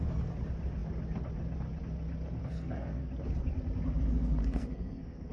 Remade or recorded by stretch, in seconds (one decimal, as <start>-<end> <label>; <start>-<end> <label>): 0.0-2.4 recorded; 2.4-3.1 remade; 3.1-4.4 recorded; 4.4-5.3 remade